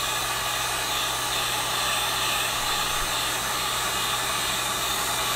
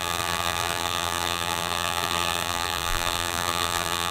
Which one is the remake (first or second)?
second